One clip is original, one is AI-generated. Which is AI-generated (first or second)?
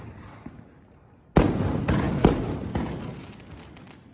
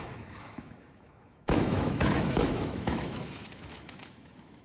second